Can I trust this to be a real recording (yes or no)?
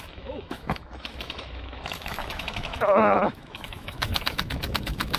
no